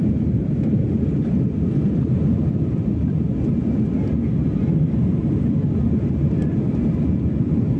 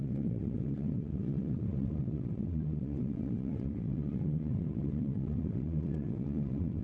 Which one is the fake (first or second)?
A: second